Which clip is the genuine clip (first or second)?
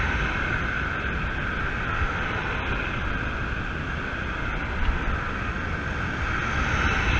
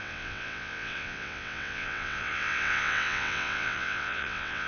first